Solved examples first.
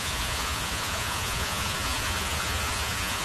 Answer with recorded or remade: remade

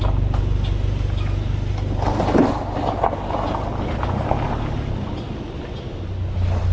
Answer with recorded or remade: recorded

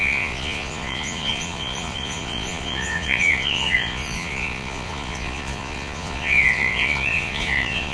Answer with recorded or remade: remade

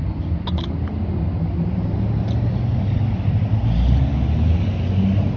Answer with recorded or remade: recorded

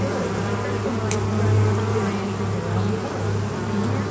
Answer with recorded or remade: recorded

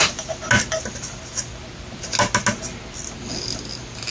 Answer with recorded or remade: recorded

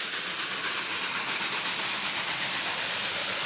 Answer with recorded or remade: recorded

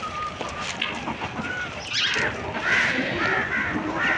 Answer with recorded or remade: recorded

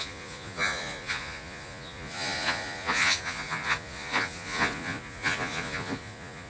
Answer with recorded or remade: remade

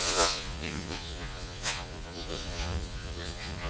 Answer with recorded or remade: remade